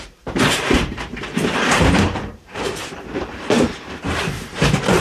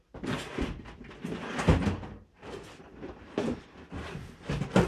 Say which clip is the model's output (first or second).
first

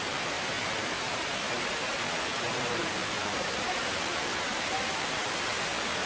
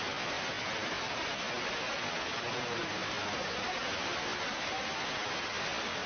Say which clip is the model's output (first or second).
first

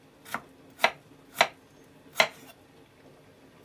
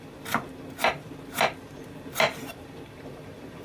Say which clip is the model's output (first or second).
second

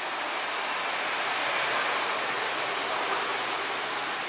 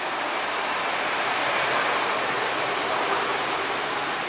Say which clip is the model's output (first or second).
second